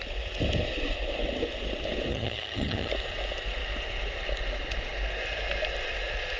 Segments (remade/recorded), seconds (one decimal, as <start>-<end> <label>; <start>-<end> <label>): 0.0-2.1 recorded; 2.1-2.9 remade; 2.9-6.4 recorded